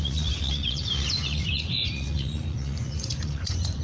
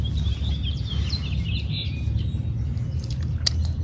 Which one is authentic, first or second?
second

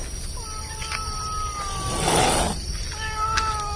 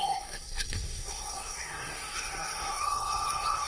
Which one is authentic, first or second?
first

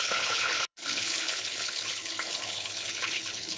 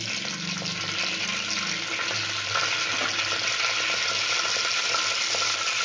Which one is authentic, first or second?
second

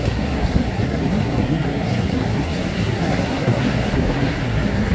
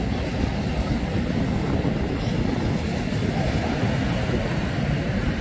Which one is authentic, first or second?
second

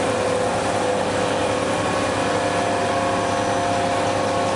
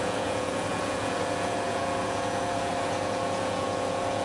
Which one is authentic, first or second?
first